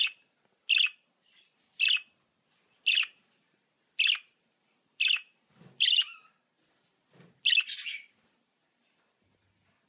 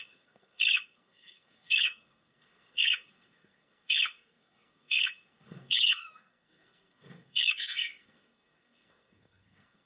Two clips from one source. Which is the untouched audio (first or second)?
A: first